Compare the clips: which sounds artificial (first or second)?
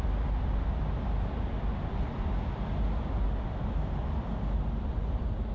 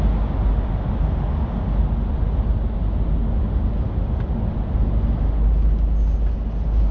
first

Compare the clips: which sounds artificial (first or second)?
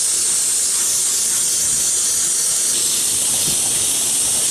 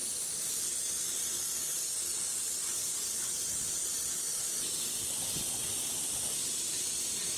second